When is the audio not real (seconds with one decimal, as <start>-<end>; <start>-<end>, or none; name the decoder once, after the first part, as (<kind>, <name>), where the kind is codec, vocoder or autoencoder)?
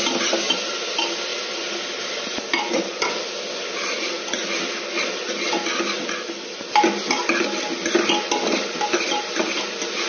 none